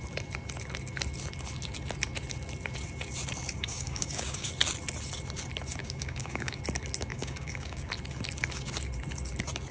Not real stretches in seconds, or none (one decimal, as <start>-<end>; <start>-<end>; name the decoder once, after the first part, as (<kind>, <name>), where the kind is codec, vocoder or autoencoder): 3.5-4.5 (codec, DAC); 5.8-6.6; 7.1-7.9